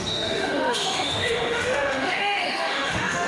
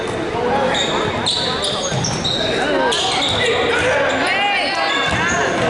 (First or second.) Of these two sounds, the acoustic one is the second